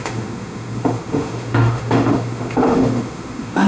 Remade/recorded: remade